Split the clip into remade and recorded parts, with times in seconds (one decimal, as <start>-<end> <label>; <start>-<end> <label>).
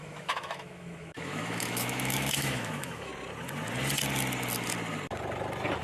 0.0-3.1 remade; 3.1-5.8 recorded